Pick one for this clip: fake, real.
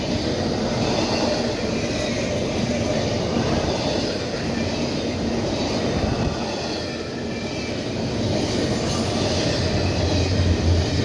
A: real